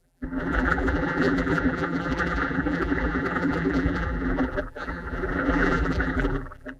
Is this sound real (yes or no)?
no